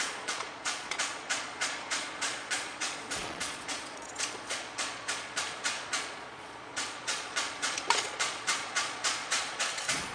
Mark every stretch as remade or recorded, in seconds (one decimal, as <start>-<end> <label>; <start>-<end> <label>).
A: 0.0-10.1 remade